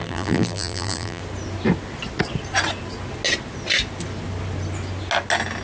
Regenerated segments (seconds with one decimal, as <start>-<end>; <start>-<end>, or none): 0.0-1.2

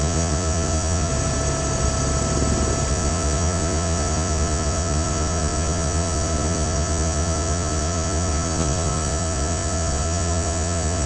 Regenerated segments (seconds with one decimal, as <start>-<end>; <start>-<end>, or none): 0.0-1.1; 2.9-11.1

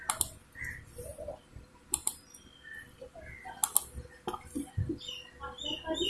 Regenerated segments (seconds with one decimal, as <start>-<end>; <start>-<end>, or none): 1.1-2.3

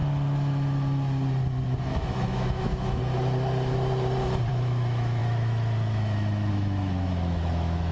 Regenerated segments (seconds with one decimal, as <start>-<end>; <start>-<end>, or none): 1.8-3.0; 4.5-7.9

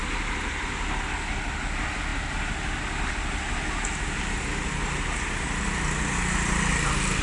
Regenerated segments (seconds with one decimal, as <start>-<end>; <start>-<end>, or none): none